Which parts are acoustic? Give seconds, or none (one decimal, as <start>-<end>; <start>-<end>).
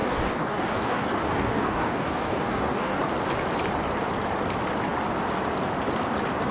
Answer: 3.0-6.5